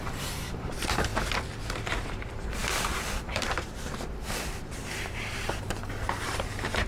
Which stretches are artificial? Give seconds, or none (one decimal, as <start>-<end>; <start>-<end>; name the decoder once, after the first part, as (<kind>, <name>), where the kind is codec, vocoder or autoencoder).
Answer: 0.0-1.1 (vocoder, BigVGAN v2); 1.7-6.9